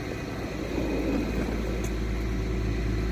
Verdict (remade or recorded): recorded